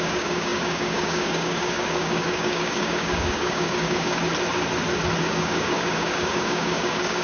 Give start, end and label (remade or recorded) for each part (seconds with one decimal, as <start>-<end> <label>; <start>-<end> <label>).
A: 0.0-4.2 remade; 4.2-5.2 recorded; 5.2-7.2 remade